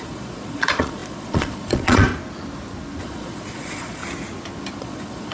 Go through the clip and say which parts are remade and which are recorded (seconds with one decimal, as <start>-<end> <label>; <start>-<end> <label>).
0.0-2.1 remade; 2.1-3.0 recorded; 3.0-4.0 remade; 4.0-4.8 recorded; 4.8-5.3 remade